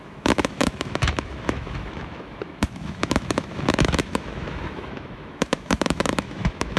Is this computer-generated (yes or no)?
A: yes